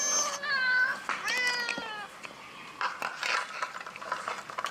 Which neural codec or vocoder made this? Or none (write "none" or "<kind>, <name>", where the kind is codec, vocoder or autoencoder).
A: none